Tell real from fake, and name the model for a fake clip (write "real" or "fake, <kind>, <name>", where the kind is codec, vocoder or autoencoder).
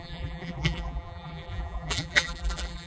fake, vocoder, BigVGAN v2